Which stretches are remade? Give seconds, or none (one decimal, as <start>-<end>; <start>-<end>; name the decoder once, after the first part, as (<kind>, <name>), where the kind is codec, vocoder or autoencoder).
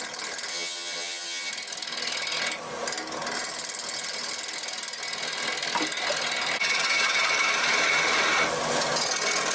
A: 0.5-1.5 (vocoder, HiFi-GAN)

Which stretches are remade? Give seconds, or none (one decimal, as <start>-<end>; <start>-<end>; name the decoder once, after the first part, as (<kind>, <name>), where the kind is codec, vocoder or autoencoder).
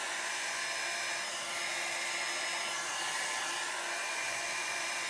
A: 0.0-0.6 (vocoder, Vocos); 3.7-5.1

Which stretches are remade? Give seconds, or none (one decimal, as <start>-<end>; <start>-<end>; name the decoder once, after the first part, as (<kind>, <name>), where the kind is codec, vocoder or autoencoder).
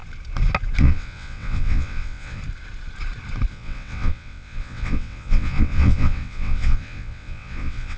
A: 0.8-2.4 (vocoder, WaveNeXt); 3.5-8.0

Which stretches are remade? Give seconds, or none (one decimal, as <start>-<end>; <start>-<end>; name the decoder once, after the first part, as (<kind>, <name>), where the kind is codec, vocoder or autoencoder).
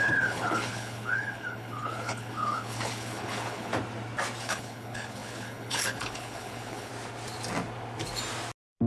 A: 0.0-3.7 (codec, HILCodec); 4.4-6.9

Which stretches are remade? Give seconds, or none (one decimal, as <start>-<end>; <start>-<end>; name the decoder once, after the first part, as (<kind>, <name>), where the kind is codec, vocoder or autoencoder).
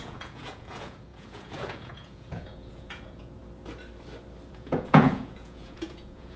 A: 0.0-3.4 (vocoder, Vocos); 4.5-6.4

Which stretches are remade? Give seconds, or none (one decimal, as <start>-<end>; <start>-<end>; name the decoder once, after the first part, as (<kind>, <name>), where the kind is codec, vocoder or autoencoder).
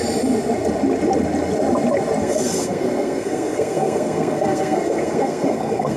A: 2.2-6.0 (codec, SNAC)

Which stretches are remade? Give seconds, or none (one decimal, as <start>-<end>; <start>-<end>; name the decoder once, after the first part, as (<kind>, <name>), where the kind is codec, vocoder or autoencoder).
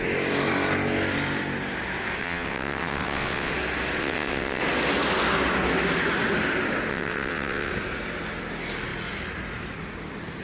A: 2.2-3.5 (vocoder, WaveNeXt); 4.0-4.6; 6.9-7.7